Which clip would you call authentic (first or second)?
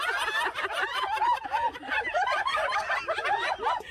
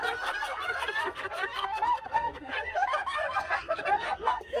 first